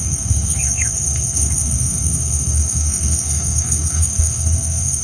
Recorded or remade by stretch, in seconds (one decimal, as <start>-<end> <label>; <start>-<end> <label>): 0.0-5.0 remade